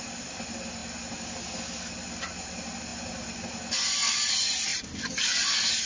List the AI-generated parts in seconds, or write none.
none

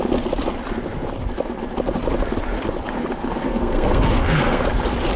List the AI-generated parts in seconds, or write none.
3.5-4.6 (codec, SNAC)

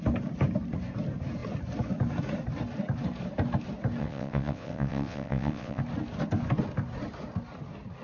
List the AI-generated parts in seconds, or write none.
4.0-5.8 (vocoder, WaveNeXt)